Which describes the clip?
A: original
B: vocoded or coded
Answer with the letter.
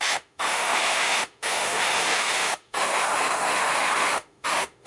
B